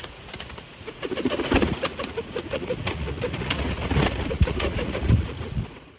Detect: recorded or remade remade